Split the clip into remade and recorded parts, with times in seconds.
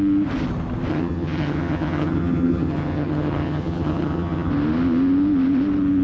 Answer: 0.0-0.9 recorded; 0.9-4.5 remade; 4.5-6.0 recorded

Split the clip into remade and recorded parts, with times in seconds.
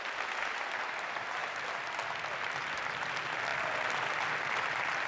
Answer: 0.0-1.4 recorded; 1.4-2.7 remade; 2.7-5.1 recorded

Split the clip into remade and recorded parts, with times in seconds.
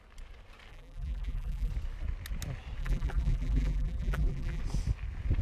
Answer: 0.0-0.7 recorded; 0.7-1.7 remade; 1.7-2.8 recorded; 2.8-4.6 remade; 4.6-5.4 recorded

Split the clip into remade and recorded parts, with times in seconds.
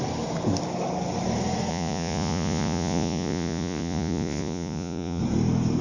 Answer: 0.0-1.7 recorded; 1.7-5.2 remade; 5.2-5.8 recorded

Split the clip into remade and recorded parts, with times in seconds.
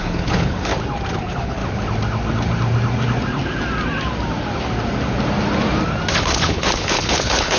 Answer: 0.0-0.7 remade; 0.7-1.2 recorded; 1.2-1.6 remade; 1.6-6.2 recorded; 6.2-7.6 remade